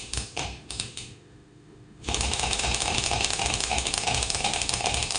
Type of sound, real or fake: fake